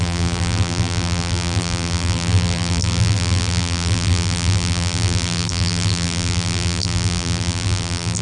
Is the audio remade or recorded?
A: remade